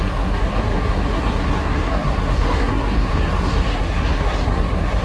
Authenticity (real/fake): fake